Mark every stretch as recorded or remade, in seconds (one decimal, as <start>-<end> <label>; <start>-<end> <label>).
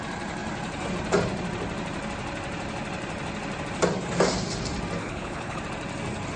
0.0-5.0 recorded; 5.0-5.6 remade; 5.6-6.4 recorded